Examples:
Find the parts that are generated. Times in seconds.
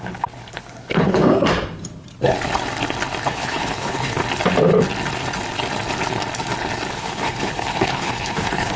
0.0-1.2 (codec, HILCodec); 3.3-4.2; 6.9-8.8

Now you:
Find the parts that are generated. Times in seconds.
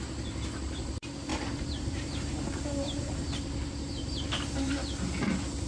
1.3-4.7 (vocoder, BigVGAN v2)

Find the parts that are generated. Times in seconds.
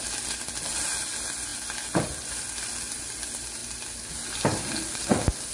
none